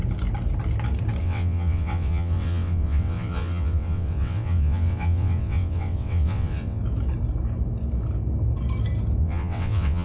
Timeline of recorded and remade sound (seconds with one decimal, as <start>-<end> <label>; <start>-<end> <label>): 0.0-1.2 recorded; 1.2-6.8 remade; 6.8-9.2 recorded; 9.2-10.0 remade